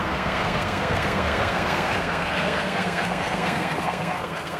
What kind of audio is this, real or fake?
fake